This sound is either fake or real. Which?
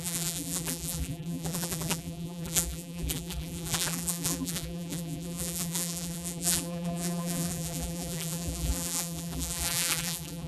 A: fake